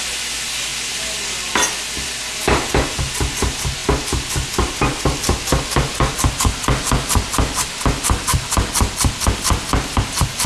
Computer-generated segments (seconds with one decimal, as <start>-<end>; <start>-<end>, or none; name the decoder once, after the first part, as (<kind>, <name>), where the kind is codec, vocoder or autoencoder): none